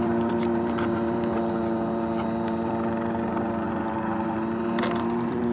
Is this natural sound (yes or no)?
no